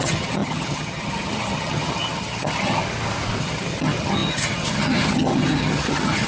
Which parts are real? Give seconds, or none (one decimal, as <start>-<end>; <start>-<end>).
2.8-3.4